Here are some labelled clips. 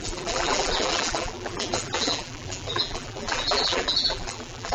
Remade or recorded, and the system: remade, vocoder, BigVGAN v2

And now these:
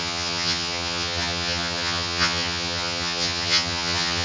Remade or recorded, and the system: remade, vocoder, HiFi-GAN